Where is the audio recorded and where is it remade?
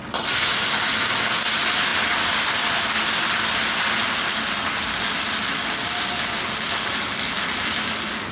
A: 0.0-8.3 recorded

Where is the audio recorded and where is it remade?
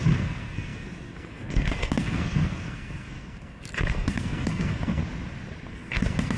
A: 0.0-5.0 remade; 5.0-5.7 recorded; 5.7-6.4 remade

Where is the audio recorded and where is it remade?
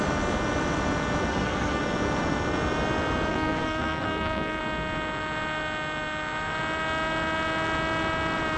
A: 0.0-1.3 recorded; 1.3-1.8 remade; 1.8-3.3 recorded; 3.3-4.6 remade; 4.6-8.6 recorded